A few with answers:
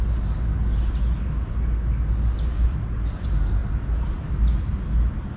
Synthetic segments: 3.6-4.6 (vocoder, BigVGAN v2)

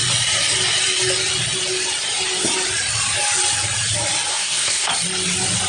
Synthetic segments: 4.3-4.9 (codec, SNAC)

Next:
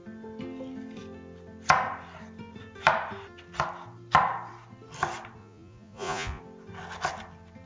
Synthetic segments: 5.4-6.4 (vocoder, Vocos)

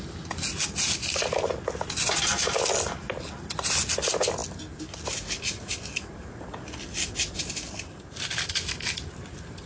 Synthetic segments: none

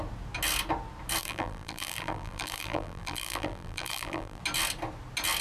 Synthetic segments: 1.2-4.4 (vocoder, BigVGAN v2)

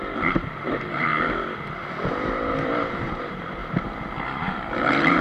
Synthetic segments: 0.0-1.1 (vocoder, BigVGAN v2); 2.1-3.6; 4.2-5.2